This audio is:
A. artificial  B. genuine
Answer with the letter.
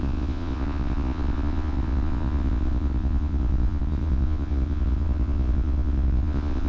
A